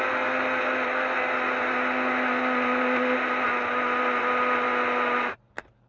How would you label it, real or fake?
real